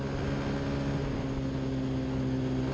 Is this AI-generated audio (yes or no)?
no